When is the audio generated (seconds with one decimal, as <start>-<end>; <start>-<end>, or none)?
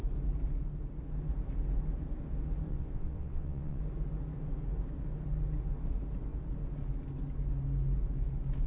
2.7-3.8